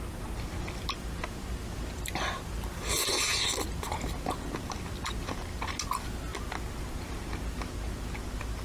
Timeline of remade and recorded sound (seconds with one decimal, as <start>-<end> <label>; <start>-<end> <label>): 0.0-8.6 recorded